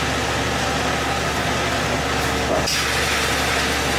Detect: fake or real real